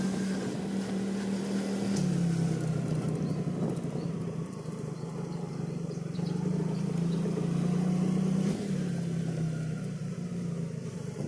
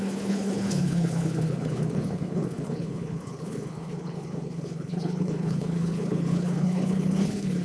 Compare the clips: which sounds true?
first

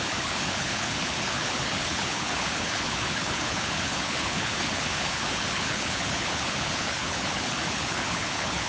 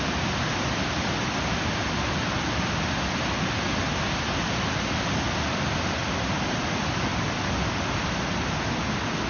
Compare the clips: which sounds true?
second